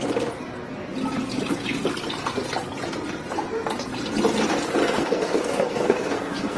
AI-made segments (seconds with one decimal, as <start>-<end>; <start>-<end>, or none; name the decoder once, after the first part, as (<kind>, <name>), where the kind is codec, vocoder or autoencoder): 4.8-6.6 (codec, SNAC)